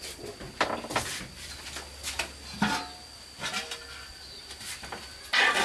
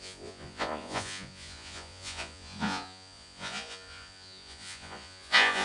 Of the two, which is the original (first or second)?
first